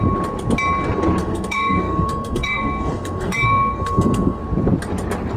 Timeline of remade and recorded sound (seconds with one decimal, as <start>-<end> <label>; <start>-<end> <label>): 0.0-1.2 recorded; 1.2-4.4 remade; 4.4-5.4 recorded